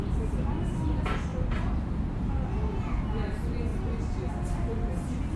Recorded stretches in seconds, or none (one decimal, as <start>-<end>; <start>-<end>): 0.0-5.4